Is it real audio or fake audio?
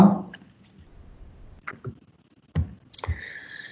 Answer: real